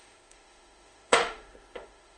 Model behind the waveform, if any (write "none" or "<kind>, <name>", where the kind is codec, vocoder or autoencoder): autoencoder, DAC-VAE